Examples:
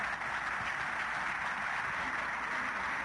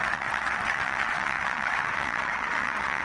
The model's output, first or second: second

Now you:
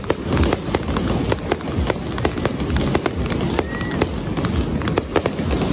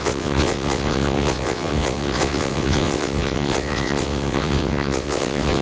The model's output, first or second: second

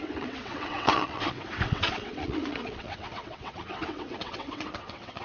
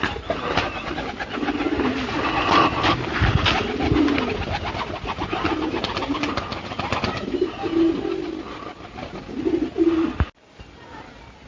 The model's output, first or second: first